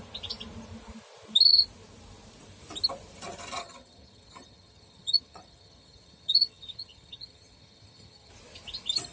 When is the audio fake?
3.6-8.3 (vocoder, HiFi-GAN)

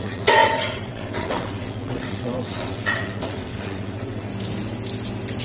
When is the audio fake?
0.0-4.3 (vocoder, WaveNeXt)